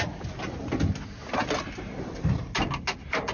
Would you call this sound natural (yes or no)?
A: yes